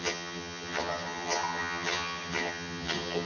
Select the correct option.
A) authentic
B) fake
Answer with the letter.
B